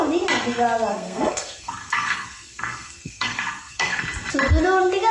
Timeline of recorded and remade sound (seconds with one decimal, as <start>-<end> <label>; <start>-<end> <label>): 0.0-0.9 recorded; 0.9-4.0 remade; 4.0-5.1 recorded